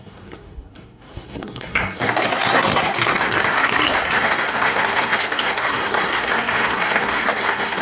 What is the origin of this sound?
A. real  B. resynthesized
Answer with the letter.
B